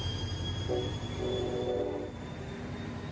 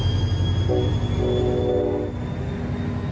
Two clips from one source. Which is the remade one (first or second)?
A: first